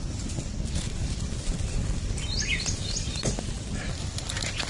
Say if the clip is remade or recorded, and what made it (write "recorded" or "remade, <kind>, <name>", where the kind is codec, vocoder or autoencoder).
recorded